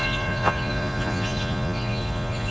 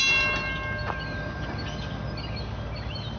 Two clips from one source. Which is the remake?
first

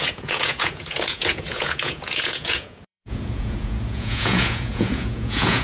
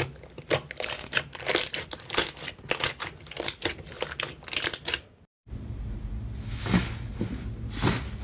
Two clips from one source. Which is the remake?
first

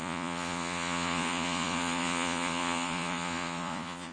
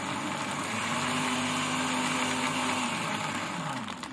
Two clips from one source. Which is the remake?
first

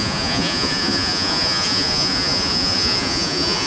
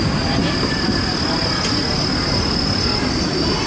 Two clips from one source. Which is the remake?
first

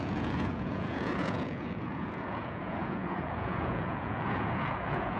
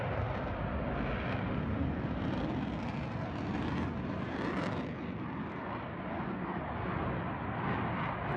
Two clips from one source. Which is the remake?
first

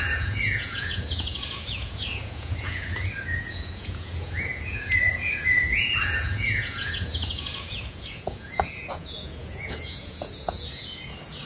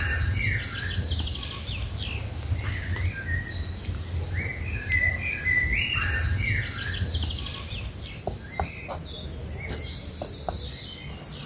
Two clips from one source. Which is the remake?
first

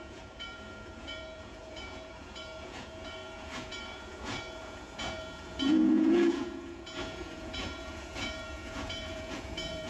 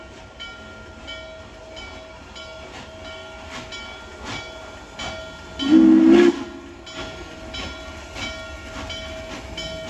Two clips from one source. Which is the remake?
first